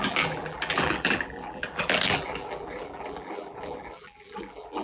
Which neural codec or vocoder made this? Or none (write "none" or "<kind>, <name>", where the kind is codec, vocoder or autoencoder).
vocoder, BigVGAN v2